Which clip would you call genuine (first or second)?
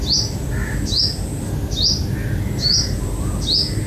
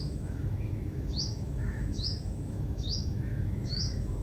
first